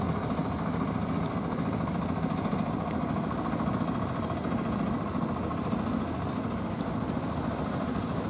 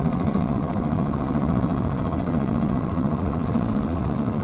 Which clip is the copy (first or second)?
second